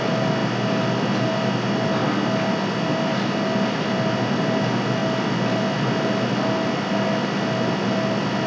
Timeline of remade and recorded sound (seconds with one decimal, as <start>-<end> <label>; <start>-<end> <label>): 0.0-8.5 recorded